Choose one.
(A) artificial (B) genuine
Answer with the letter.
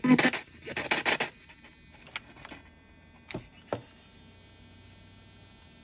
B